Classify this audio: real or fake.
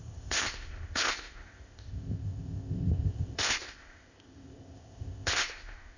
fake